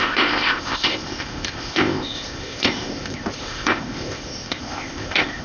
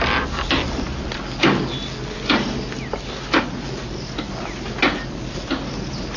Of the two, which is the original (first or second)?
second